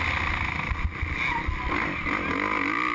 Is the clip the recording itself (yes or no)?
yes